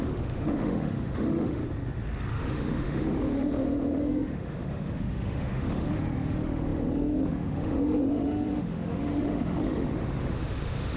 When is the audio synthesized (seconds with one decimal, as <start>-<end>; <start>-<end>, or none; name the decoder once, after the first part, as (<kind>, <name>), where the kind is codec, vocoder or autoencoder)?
0.0-1.6 (autoencoder, DAC-VAE); 2.3-11.0